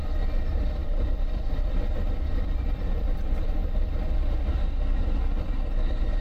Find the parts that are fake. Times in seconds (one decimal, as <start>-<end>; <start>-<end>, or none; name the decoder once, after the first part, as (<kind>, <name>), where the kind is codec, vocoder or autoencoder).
0.0-3.6 (vocoder, BigVGAN v2)